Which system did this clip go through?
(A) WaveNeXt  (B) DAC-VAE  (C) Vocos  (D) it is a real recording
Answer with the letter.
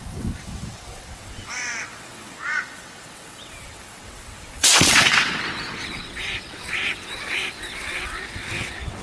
A